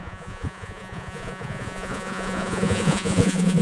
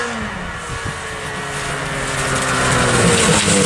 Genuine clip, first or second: second